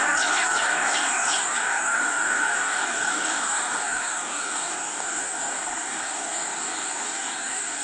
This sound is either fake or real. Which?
fake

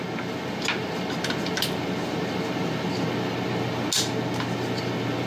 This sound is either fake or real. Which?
real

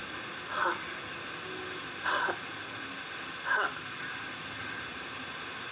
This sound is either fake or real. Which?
real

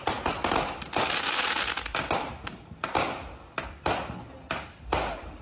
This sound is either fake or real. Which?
real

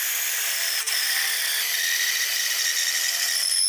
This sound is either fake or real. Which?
real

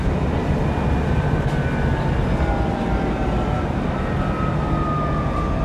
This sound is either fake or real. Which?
real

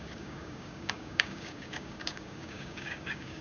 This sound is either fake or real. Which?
fake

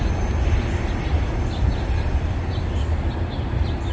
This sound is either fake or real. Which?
real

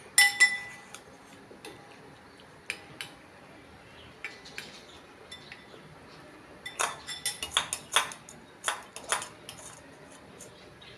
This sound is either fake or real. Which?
real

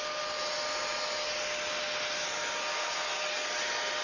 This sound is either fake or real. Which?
real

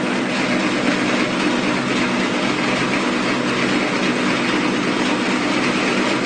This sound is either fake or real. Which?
real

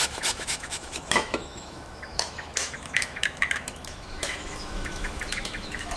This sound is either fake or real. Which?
fake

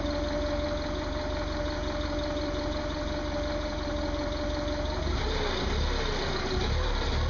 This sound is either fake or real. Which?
real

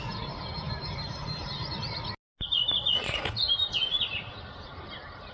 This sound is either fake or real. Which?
real